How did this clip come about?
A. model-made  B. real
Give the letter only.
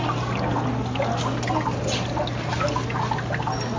B